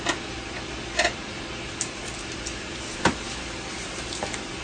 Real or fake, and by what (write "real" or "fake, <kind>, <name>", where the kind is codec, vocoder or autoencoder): fake, vocoder, BigVGAN v2